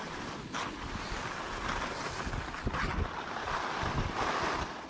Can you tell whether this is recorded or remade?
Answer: recorded